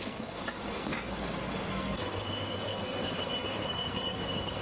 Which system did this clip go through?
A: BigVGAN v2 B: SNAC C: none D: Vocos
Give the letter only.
B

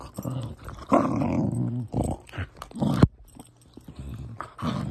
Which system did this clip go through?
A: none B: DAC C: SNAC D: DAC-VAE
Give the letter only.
A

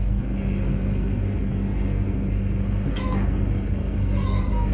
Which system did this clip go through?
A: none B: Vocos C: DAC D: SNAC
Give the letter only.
D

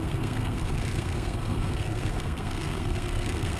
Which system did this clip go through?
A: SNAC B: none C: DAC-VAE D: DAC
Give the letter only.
A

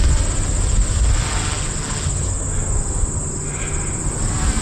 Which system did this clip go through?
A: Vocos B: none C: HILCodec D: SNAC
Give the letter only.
B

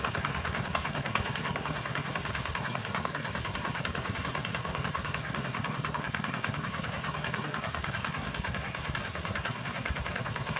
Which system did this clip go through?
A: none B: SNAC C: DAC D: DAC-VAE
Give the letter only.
B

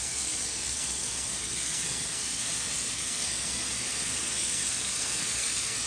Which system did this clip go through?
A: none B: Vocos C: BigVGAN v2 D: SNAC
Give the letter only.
D